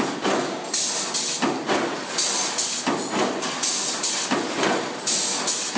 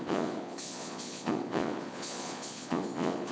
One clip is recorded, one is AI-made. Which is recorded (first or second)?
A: first